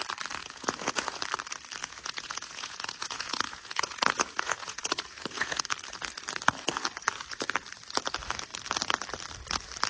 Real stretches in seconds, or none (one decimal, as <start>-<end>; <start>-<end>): 0.0-0.4; 1.2-1.8; 5.6-9.9